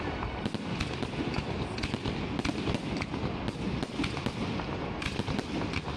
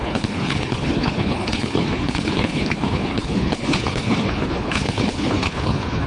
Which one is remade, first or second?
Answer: second